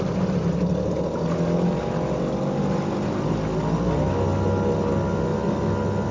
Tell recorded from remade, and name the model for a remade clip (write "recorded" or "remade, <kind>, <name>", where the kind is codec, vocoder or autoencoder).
recorded